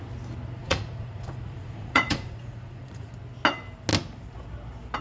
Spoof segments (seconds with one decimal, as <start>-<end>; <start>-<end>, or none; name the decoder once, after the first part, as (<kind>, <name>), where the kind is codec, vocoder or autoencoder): 0.6-3.1 (vocoder, Vocos)